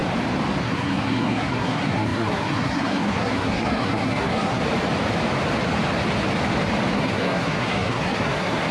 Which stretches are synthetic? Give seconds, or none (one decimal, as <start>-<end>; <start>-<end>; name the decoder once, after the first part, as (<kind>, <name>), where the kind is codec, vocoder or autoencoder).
0.6-4.6 (codec, SNAC); 6.9-8.7